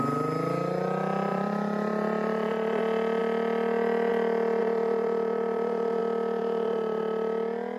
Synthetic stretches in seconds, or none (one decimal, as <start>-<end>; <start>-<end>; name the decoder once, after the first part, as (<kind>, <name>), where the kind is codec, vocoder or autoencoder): 1.3-2.8 (vocoder, BigVGAN v2); 4.6-6.0; 6.4-7.0